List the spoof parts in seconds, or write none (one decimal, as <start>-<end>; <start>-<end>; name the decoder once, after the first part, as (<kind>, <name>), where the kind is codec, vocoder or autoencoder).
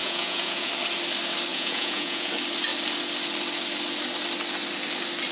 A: 0.0-0.7 (vocoder, Vocos); 1.5-2.3